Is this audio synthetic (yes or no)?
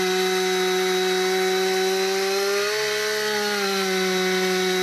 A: no